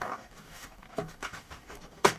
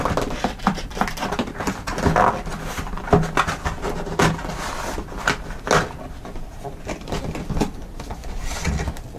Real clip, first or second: second